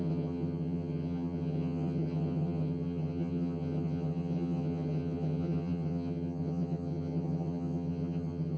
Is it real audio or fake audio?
fake